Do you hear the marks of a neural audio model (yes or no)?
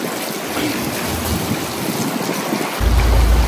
no